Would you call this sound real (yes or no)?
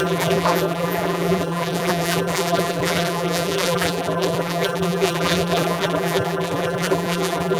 no